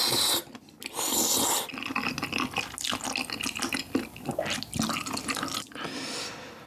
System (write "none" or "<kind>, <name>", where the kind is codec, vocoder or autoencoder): none